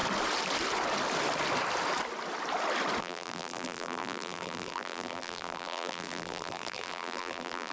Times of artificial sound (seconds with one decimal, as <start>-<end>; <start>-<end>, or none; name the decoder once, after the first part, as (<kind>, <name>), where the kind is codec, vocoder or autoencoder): 3.0-7.7 (vocoder, BigVGAN v2)

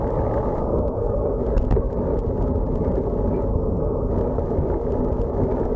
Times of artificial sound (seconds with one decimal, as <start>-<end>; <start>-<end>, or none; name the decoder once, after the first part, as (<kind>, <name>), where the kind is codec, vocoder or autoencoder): 0.6-1.4 (codec, SNAC); 3.5-4.1